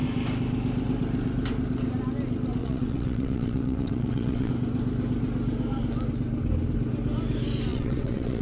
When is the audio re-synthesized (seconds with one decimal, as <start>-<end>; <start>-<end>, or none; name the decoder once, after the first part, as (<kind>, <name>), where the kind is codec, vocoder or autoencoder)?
2.6-4.5 (vocoder, WaveNeXt); 7.7-8.4